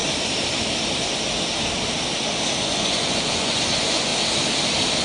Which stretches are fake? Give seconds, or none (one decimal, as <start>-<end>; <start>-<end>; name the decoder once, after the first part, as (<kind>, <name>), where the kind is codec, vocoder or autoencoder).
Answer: 2.6-4.1 (vocoder, Vocos)